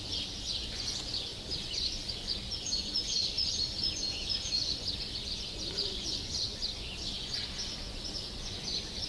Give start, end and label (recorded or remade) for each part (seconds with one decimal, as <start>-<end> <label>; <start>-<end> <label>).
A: 0.0-9.1 remade